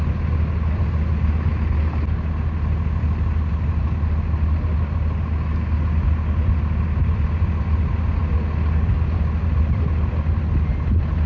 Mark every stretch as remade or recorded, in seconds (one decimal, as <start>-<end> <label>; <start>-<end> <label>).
0.0-11.3 recorded